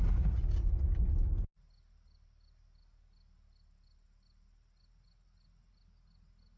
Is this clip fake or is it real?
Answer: real